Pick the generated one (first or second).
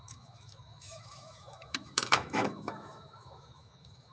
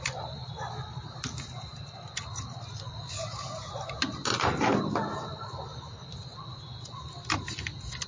first